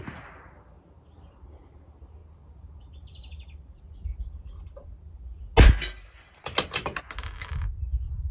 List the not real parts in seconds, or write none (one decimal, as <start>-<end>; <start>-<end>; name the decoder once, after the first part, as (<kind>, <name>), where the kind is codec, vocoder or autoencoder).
none